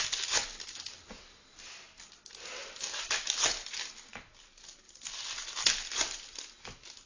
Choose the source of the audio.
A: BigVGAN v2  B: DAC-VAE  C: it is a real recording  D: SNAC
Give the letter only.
C